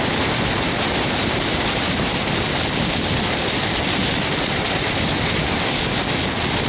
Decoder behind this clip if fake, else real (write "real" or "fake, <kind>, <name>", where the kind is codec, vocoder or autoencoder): real